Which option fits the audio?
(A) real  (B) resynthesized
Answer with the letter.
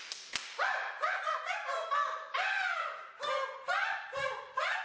A